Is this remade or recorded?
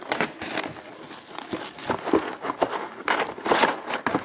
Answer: recorded